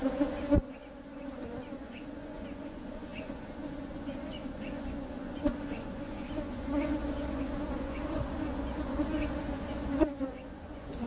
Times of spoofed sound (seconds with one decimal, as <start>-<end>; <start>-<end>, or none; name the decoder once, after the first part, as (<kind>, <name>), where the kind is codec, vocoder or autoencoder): 0.0-11.1 (vocoder, Vocos)